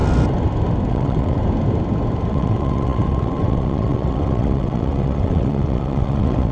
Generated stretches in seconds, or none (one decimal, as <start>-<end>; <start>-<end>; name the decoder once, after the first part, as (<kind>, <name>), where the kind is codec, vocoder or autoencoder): 0.9-1.4 (vocoder, WaveNeXt); 2.3-6.5